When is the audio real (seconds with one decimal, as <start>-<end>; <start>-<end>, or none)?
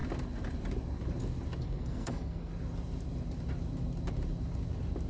0.0-1.6; 2.5-5.1